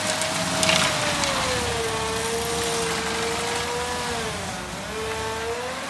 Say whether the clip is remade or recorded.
recorded